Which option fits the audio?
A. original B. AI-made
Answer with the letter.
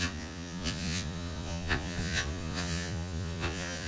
B